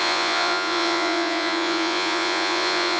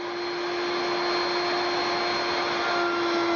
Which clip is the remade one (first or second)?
first